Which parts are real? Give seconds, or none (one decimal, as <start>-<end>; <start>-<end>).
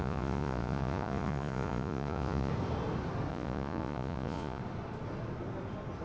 2.5-3.3; 4.6-6.0